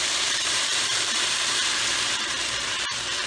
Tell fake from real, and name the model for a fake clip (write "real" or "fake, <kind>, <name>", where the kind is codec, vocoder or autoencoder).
fake, vocoder, BigVGAN v2